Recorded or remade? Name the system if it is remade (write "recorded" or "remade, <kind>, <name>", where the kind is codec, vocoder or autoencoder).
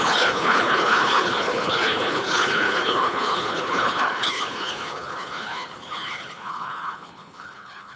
remade, codec, HILCodec